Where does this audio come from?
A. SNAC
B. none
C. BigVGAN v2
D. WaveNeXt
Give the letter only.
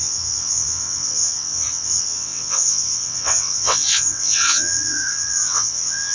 D